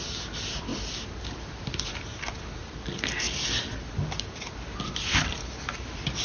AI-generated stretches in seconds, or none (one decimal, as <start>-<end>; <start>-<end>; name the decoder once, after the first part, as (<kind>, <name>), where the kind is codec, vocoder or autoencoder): none